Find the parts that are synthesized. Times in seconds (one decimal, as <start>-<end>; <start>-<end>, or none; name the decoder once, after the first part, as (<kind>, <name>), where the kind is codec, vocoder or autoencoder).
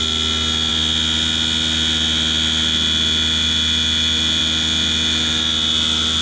none